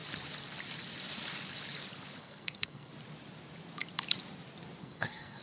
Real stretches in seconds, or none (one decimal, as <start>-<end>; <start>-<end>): 0.0-2.2; 2.9-4.8